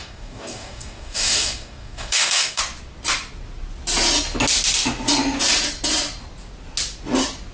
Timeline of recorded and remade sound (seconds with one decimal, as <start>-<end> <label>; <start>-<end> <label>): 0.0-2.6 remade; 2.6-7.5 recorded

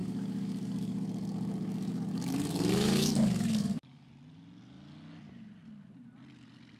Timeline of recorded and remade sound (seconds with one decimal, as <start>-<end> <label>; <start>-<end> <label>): 0.0-4.1 remade; 4.1-6.8 recorded

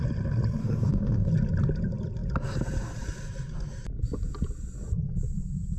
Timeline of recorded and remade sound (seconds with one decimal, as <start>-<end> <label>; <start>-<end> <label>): 0.0-0.6 recorded; 0.6-1.3 remade; 1.3-5.8 recorded

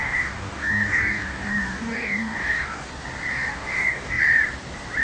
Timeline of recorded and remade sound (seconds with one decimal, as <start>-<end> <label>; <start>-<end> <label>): 0.0-2.9 remade; 2.9-3.3 recorded; 3.3-4.2 remade; 4.2-5.0 recorded

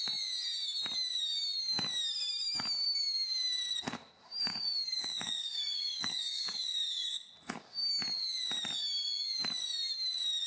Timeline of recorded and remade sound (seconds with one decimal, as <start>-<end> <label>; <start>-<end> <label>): 0.0-4.5 recorded; 4.5-7.3 remade; 7.3-10.5 recorded